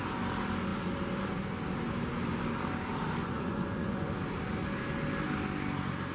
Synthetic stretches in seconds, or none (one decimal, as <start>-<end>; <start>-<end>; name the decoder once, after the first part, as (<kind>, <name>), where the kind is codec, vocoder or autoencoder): 3.2-4.1 (vocoder, Vocos)